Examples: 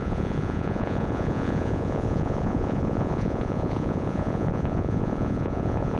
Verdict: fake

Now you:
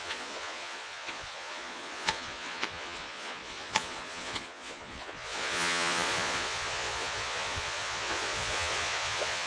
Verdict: fake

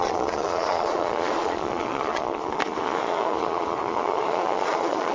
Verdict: fake